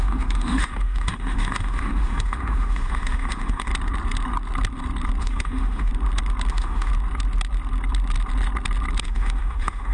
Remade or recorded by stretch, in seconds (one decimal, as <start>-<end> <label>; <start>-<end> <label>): 0.0-3.7 remade; 3.7-5.2 recorded; 5.2-5.9 remade; 5.9-6.5 recorded; 6.5-6.9 remade; 6.9-9.0 recorded; 9.0-9.9 remade